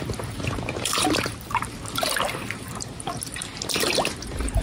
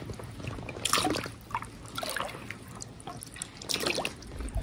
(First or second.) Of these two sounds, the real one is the second